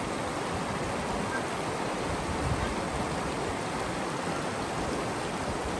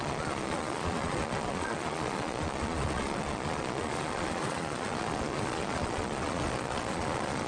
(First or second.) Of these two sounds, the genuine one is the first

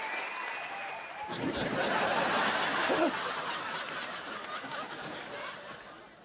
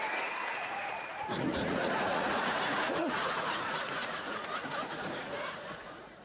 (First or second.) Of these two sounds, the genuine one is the first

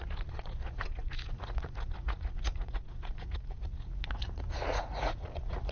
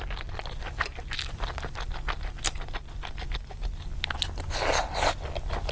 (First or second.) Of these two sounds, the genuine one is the second